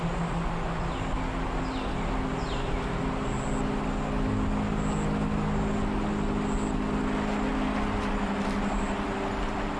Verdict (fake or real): real